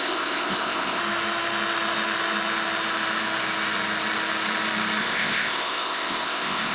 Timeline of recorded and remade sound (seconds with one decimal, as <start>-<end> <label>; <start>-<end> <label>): 0.0-1.0 remade; 1.0-5.0 recorded; 5.0-6.7 remade